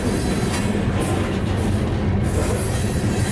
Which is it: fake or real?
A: real